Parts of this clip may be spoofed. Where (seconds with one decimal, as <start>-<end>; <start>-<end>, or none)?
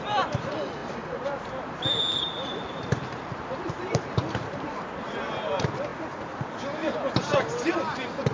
0.8-4.7